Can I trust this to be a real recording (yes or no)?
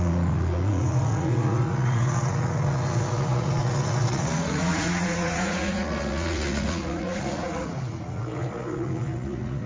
no